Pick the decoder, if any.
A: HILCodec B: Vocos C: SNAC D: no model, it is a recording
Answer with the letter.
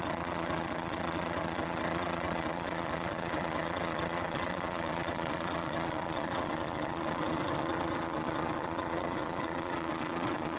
B